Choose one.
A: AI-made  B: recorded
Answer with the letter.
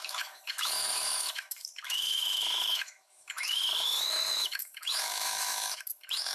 A